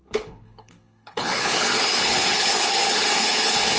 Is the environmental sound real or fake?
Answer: fake